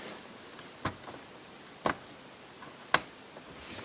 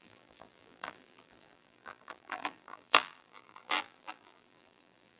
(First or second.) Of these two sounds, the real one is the first